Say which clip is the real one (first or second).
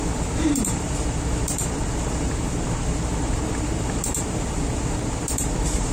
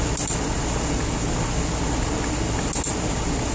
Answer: second